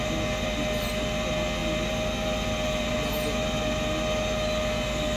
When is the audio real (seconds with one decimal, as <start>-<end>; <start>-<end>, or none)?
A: 0.0-5.2